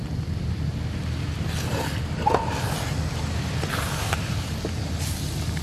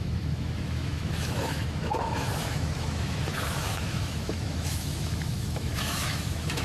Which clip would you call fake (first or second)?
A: second